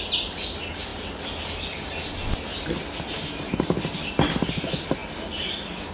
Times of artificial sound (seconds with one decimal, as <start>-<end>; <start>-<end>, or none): none